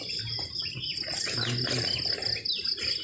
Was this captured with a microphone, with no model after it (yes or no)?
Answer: yes